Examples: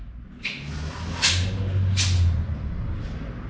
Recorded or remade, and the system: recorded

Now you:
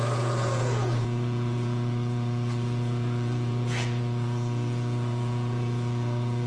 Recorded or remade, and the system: remade, vocoder, Vocos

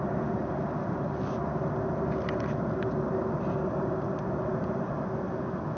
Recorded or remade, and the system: recorded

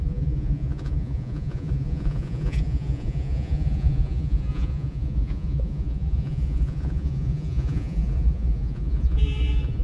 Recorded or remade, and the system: remade, vocoder, Vocos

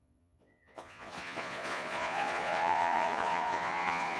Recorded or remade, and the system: remade, vocoder, Vocos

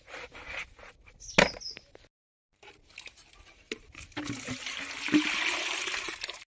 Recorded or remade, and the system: recorded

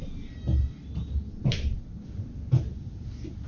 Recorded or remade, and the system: recorded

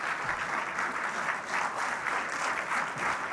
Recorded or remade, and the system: recorded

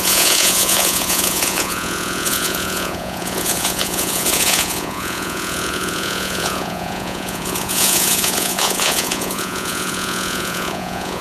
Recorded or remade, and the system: remade, vocoder, Vocos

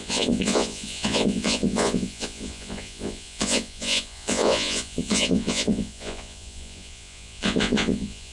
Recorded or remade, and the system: remade, vocoder, Vocos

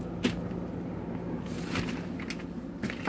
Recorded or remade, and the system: recorded